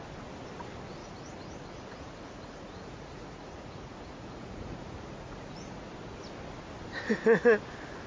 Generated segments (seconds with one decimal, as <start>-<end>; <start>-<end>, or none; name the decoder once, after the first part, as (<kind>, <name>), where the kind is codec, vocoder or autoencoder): 1.0-5.9 (vocoder, Vocos)